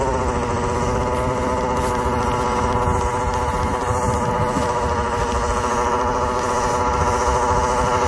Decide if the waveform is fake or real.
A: real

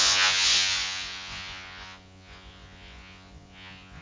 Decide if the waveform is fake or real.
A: fake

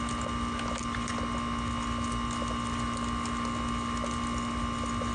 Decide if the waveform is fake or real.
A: real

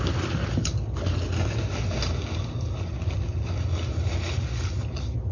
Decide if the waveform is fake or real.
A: real